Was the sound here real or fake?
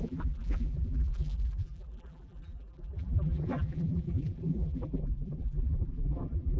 fake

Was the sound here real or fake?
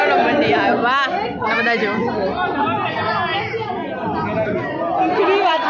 real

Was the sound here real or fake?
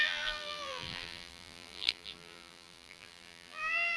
fake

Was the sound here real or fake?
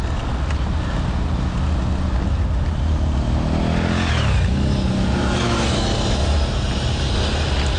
real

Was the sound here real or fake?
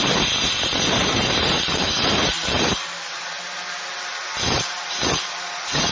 fake